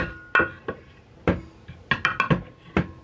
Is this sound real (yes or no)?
yes